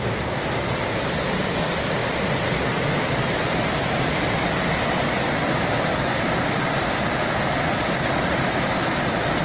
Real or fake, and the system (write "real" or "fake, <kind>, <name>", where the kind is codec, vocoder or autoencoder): real